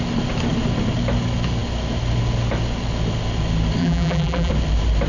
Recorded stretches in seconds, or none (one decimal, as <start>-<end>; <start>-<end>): 0.0-3.8; 4.5-5.1